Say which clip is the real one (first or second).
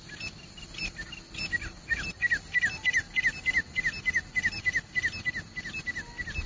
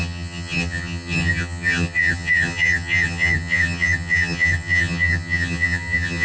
first